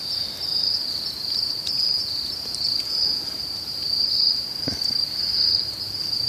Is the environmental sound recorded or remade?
recorded